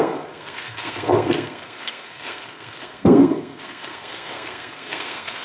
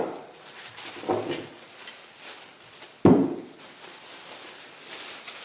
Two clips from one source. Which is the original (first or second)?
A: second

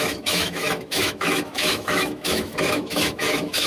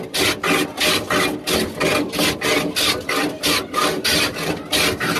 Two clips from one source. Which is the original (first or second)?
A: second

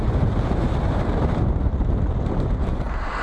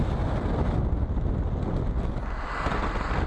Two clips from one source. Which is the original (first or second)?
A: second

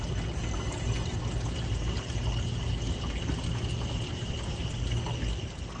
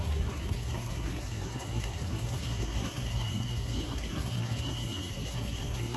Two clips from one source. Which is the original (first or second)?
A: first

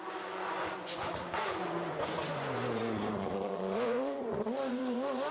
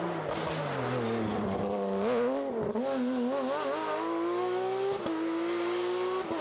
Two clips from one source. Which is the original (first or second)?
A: second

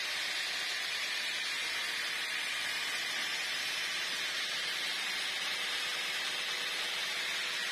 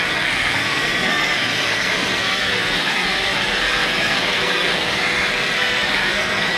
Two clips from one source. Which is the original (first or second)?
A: first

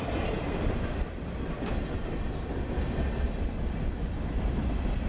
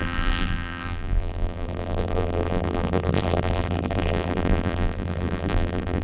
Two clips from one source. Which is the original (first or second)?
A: first